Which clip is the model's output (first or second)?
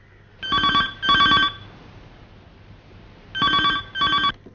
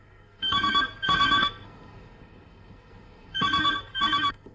second